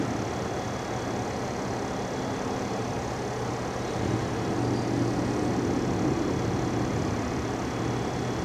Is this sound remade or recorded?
recorded